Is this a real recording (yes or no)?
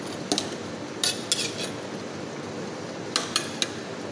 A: yes